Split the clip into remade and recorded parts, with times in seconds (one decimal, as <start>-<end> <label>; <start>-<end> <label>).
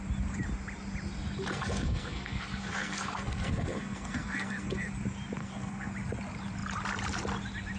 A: 0.0-1.5 recorded; 1.5-4.9 remade; 4.9-5.4 recorded; 5.4-5.9 remade; 5.9-7.8 recorded